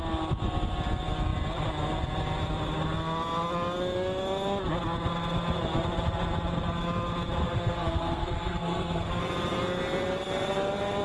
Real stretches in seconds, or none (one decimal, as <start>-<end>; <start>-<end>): 0.0-7.4; 9.2-11.0